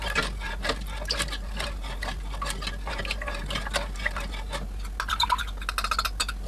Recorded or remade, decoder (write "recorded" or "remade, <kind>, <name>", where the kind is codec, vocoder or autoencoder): recorded